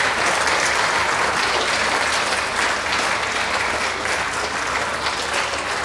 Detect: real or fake real